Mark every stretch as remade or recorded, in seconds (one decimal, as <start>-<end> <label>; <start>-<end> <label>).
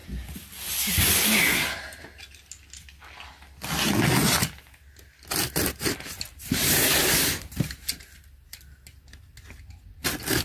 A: 0.0-10.4 recorded